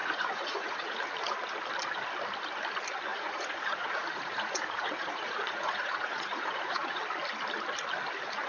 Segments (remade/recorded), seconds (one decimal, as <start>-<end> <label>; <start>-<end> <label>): 0.0-1.0 remade; 1.0-3.1 recorded; 3.1-7.0 remade; 7.0-8.5 recorded